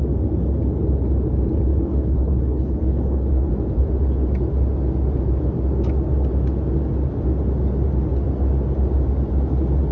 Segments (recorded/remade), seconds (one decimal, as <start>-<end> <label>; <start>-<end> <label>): 0.0-1.7 recorded; 1.7-3.5 remade; 3.5-9.9 recorded